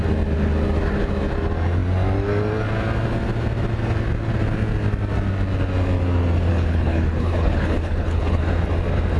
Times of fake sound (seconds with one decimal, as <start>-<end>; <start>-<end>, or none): 6.5-8.4